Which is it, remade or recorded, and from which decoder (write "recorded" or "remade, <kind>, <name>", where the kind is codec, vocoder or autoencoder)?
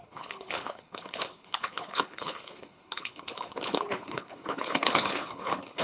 remade, codec, HILCodec